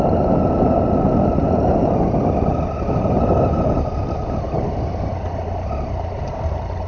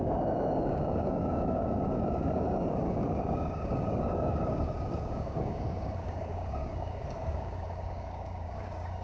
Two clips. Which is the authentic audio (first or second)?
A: first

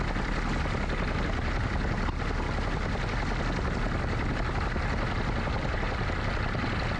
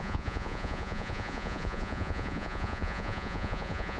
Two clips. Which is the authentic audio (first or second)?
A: first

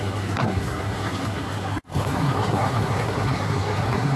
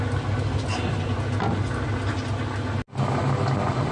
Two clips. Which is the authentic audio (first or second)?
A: second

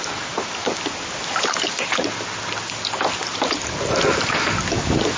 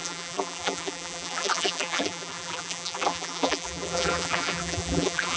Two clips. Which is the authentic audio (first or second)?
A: first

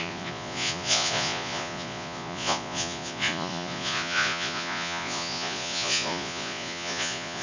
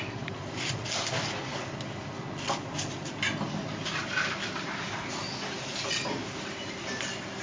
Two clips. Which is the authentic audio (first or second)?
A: second